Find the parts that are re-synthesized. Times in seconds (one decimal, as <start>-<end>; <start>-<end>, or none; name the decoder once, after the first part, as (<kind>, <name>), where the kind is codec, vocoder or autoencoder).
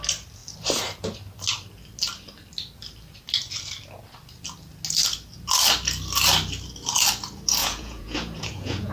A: 7.6-8.9 (vocoder, Vocos)